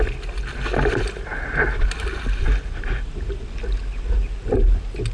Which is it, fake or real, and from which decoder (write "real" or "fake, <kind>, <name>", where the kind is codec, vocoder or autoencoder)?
real